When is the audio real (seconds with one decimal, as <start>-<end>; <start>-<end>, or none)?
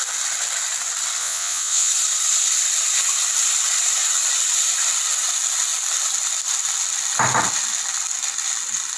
0.0-1.2; 1.9-9.0